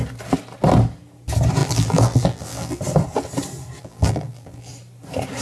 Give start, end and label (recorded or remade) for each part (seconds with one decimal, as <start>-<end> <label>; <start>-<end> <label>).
0.0-1.6 recorded; 1.6-2.8 remade; 2.8-3.8 recorded; 3.8-4.7 remade; 4.7-5.4 recorded